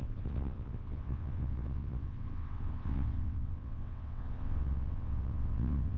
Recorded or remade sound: remade